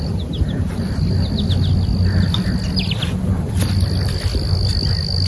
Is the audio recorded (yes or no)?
yes